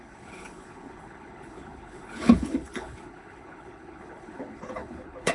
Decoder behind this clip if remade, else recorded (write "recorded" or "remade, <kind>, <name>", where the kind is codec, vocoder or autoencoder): remade, codec, HILCodec